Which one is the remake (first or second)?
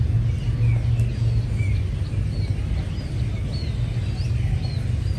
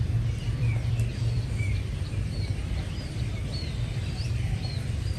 second